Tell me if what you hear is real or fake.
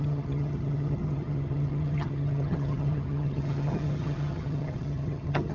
fake